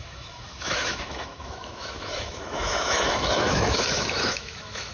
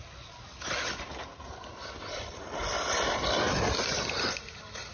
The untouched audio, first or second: second